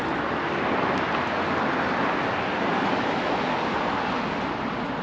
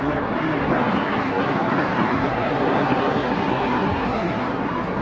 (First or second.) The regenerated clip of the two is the second